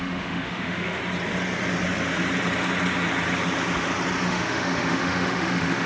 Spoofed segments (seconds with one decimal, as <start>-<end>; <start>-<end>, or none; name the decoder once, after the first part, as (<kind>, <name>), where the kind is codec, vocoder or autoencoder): 0.0-1.0 (autoencoder, DAC-VAE); 4.3-5.9